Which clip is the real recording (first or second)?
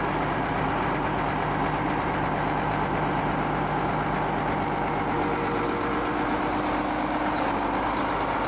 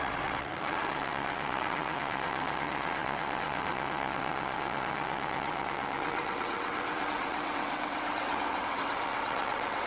first